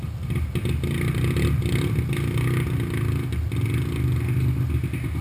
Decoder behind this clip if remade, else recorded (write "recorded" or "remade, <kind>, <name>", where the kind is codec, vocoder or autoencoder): recorded